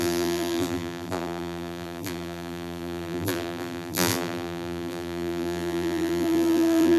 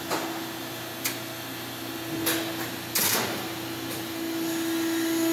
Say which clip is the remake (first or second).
first